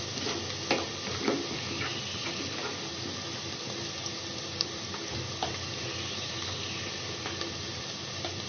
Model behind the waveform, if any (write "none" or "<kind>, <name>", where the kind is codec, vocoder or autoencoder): none